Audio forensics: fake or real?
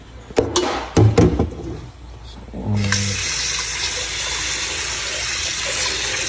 real